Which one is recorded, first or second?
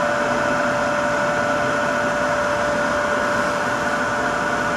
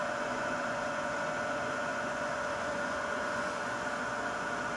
first